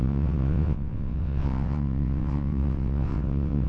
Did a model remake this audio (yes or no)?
yes